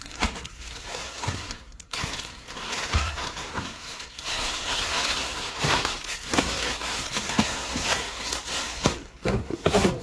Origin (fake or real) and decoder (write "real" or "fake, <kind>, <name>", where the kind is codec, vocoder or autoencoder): fake, codec, SNAC